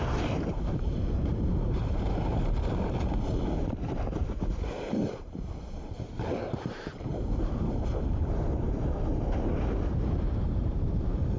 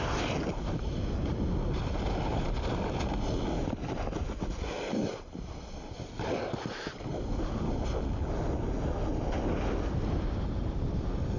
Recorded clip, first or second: second